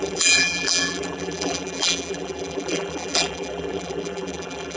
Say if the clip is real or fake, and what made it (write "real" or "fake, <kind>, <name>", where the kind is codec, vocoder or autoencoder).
fake, vocoder, BigVGAN v2